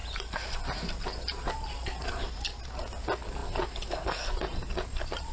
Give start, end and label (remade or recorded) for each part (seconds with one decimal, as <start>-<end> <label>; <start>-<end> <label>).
0.0-5.3 recorded